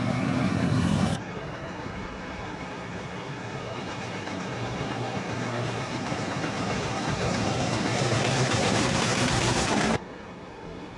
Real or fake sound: fake